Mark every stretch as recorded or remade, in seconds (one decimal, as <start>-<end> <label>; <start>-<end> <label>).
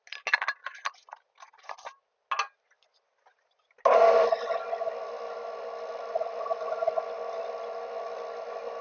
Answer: 0.0-8.8 recorded